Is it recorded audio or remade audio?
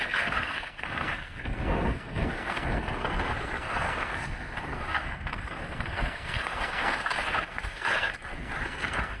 remade